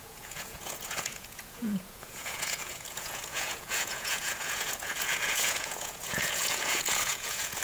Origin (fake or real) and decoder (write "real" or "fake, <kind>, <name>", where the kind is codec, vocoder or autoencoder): fake, vocoder, Vocos